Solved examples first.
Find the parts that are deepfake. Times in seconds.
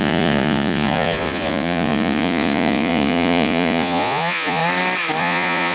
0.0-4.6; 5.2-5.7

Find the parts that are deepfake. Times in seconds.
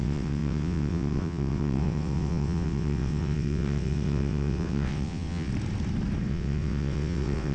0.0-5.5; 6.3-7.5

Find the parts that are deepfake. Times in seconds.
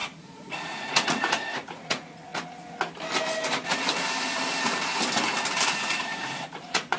0.0-2.3; 5.7-7.0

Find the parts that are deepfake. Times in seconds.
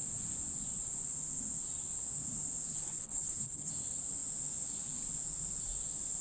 2.7-3.7